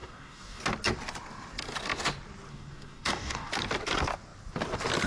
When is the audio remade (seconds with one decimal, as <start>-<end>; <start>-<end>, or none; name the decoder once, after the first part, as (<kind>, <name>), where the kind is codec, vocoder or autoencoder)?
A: 0.0-0.6 (codec, DAC); 2.5-3.5

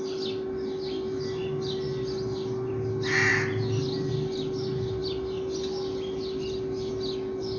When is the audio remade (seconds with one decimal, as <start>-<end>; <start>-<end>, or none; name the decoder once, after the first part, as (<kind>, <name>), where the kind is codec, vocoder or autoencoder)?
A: none

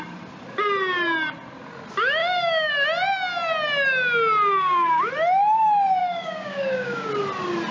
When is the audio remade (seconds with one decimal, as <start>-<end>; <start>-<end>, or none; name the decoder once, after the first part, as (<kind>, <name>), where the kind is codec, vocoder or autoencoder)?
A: 2.2-2.7 (codec, DAC); 4.5-5.1; 6.0-7.1

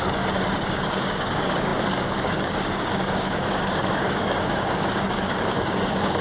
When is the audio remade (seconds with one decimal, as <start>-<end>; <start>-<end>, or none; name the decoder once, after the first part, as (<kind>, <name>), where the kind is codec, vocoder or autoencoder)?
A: 0.0-6.2 (codec, DAC)

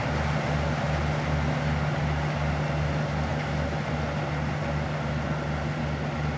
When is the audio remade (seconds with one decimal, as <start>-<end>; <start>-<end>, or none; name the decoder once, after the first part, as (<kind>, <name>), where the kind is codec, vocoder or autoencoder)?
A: none

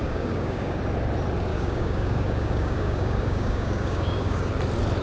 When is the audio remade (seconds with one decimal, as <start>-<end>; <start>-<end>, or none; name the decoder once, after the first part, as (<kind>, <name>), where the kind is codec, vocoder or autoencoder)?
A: 0.0-0.8 (codec, DAC); 1.5-4.5

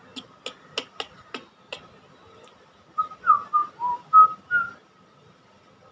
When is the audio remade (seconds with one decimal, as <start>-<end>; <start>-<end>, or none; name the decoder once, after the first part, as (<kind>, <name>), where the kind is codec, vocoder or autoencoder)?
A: none

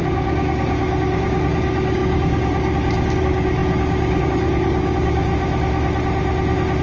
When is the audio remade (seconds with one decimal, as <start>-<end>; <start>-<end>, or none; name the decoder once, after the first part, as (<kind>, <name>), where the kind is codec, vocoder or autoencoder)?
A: 0.0-5.3 (codec, DAC)